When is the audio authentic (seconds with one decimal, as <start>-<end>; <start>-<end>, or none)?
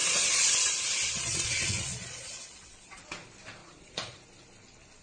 3.0-3.6; 4.2-5.0